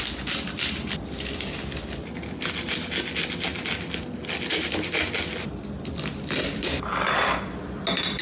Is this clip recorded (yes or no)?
yes